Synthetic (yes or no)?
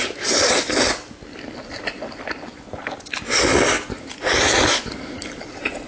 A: no